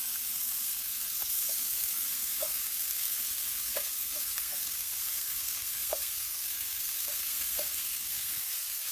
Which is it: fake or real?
fake